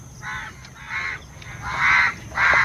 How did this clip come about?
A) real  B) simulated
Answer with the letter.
A